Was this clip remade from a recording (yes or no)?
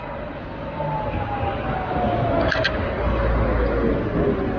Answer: no